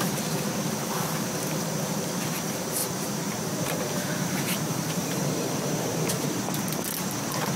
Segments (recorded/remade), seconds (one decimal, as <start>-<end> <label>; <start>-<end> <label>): 0.0-2.8 recorded; 2.8-6.4 remade; 6.4-7.6 recorded